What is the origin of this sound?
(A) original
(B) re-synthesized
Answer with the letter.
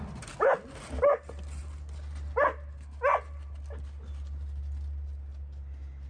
A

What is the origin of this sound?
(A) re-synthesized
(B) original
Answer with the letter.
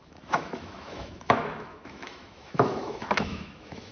A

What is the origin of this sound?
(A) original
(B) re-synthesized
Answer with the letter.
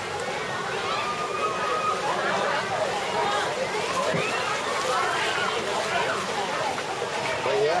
A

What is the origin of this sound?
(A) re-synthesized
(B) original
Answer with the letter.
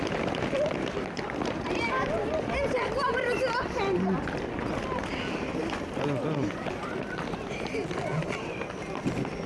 B